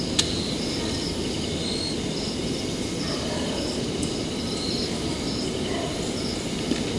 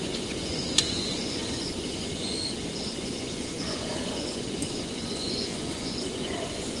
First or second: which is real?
first